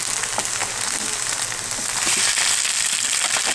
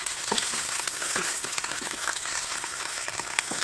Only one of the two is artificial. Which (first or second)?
second